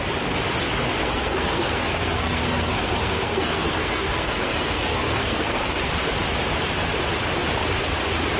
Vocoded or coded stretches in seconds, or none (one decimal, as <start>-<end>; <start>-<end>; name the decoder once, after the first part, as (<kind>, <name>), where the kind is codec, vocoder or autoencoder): 0.9-5.9 (codec, SNAC)

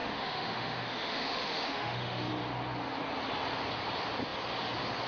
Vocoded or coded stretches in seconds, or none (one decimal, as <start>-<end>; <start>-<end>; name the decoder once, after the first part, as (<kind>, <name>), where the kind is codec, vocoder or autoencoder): 0.0-2.3 (autoencoder, DAC-VAE)

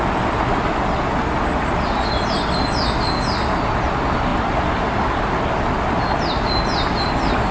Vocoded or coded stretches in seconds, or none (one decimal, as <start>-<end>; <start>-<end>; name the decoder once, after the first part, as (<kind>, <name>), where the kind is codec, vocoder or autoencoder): none

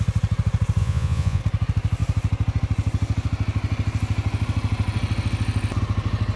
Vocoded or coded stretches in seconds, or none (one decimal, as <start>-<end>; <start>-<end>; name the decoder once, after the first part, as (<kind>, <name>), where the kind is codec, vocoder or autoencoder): 0.8-1.4 (vocoder, Vocos)

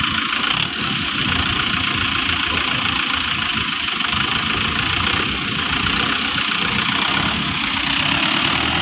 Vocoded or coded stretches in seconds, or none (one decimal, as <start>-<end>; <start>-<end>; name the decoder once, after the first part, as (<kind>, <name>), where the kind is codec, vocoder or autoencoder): none

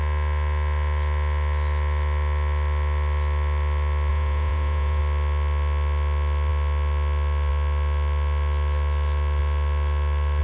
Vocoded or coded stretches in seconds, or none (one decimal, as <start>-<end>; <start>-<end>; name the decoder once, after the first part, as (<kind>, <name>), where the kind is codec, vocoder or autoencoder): 4.1-5.0 (vocoder, Vocos)